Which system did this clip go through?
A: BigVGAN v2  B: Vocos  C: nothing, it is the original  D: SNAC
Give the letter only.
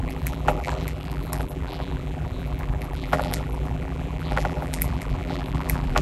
A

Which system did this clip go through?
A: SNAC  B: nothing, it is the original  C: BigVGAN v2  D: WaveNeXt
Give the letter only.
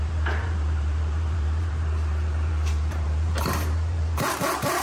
C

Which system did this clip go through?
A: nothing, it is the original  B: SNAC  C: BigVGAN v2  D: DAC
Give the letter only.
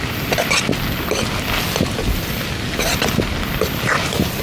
A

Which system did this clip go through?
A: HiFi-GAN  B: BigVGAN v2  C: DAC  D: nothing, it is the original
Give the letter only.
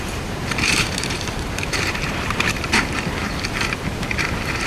B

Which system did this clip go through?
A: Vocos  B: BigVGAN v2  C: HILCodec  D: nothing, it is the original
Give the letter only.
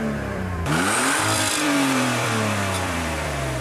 B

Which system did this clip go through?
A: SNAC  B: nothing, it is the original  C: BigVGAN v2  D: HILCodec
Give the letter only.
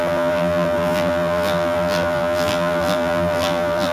C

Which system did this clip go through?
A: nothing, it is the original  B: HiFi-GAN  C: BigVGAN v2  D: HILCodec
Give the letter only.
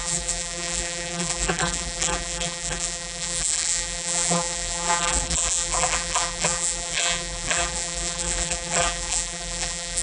C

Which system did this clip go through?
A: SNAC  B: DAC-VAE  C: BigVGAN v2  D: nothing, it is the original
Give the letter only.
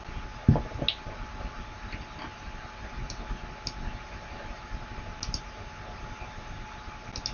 D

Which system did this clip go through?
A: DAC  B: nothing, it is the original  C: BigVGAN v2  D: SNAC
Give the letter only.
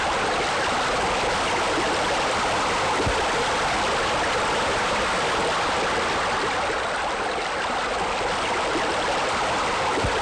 B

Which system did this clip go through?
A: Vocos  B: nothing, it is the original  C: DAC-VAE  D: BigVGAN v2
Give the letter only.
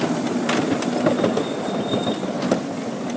B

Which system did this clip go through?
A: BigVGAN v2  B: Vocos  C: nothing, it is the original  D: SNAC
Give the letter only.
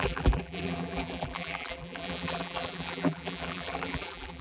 A